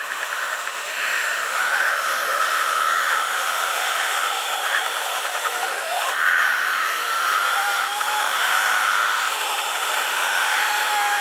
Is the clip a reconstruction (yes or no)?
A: yes